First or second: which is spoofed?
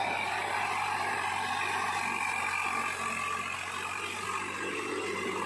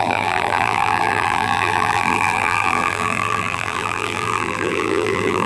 second